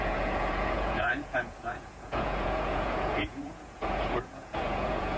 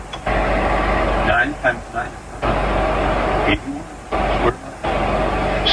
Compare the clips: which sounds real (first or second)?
second